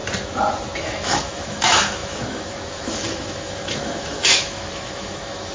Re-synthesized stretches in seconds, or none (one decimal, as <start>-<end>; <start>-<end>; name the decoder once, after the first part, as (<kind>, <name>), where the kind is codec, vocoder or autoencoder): 0.8-5.5 (autoencoder, DAC-VAE)